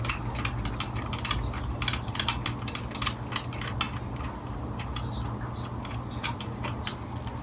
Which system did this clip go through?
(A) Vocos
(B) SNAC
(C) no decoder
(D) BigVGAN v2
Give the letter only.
C